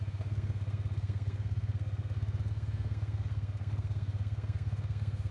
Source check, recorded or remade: remade